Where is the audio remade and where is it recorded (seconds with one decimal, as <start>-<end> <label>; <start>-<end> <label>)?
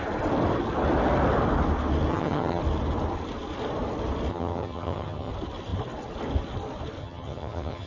0.0-2.1 recorded; 2.1-2.6 remade; 2.6-4.3 recorded; 4.3-5.3 remade; 5.3-7.0 recorded; 7.0-7.9 remade